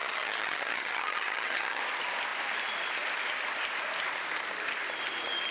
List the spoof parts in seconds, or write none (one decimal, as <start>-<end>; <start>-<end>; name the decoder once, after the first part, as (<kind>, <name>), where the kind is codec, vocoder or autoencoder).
0.0-1.8 (vocoder, HiFi-GAN)